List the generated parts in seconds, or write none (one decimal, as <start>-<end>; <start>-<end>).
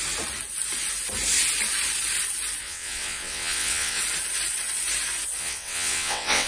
2.6-4.0; 5.4-6.5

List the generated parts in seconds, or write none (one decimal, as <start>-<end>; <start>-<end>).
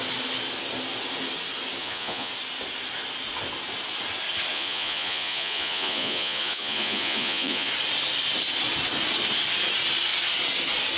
1.8-2.3; 4.5-7.7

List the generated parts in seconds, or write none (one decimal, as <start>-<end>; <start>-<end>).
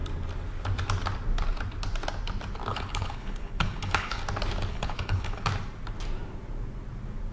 2.7-4.2; 4.7-5.4